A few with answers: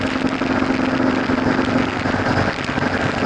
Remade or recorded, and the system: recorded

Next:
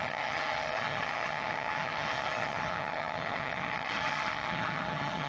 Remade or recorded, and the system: remade, vocoder, HiFi-GAN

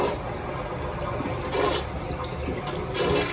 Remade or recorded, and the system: recorded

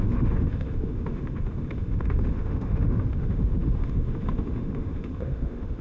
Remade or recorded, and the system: remade, autoencoder, DAC-VAE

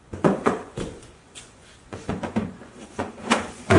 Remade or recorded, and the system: remade, vocoder, Vocos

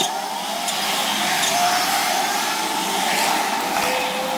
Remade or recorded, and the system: recorded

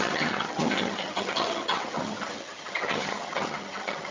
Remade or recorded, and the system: remade, vocoder, HiFi-GAN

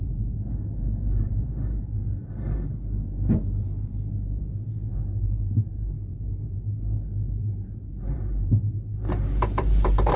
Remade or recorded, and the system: remade, vocoder, BigVGAN v2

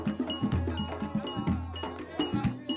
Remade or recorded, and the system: recorded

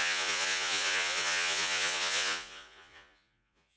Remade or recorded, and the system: remade, vocoder, Vocos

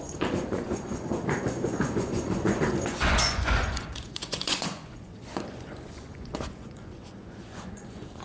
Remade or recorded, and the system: remade, vocoder, Vocos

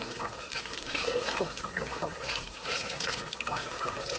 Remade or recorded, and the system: remade, codec, SNAC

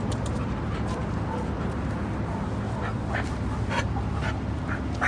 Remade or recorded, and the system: recorded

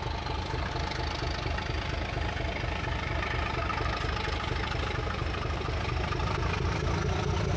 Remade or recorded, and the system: recorded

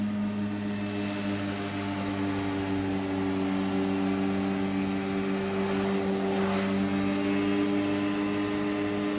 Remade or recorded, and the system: recorded